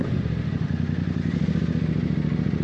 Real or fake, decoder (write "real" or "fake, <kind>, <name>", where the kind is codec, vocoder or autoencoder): real